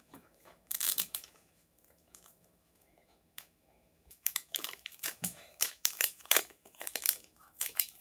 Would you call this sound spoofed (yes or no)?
yes